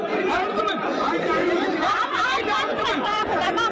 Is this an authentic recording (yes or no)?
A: no